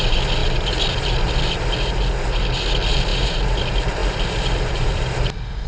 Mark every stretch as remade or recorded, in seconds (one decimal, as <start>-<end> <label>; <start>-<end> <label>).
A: 0.0-5.7 recorded